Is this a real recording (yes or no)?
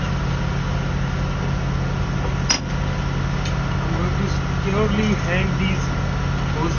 yes